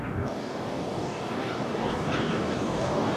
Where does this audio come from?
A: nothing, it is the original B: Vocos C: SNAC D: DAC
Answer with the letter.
D